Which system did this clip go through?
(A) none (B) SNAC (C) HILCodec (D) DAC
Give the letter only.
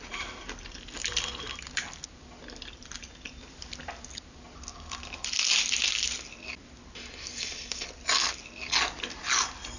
A